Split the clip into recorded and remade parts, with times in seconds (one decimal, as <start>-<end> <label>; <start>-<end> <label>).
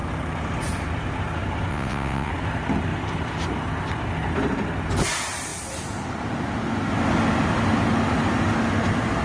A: 0.0-1.7 recorded; 1.7-2.3 remade; 2.3-9.2 recorded